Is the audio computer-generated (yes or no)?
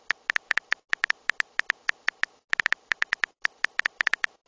no